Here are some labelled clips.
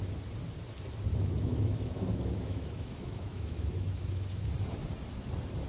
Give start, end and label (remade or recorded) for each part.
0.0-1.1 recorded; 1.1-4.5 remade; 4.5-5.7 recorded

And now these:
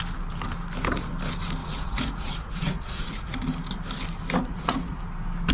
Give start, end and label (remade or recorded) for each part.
0.0-1.6 recorded; 1.6-3.3 remade; 3.3-4.5 recorded; 4.5-5.0 remade; 5.0-5.5 recorded

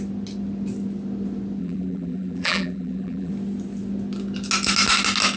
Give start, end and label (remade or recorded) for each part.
0.0-1.6 recorded; 1.6-3.3 remade; 3.3-5.4 recorded

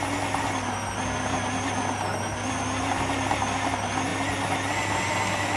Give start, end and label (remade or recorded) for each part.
0.0-5.6 recorded